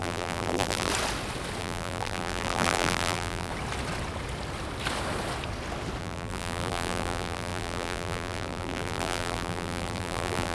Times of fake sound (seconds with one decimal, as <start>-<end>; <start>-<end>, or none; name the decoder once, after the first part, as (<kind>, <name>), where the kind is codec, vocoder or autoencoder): 0.0-0.9 (vocoder, BigVGAN v2); 1.6-3.5; 6.0-10.5